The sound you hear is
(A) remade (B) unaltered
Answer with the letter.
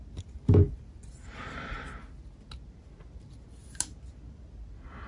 B